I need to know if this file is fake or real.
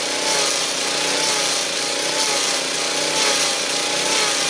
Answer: real